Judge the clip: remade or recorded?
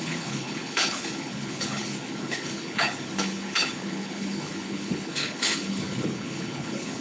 remade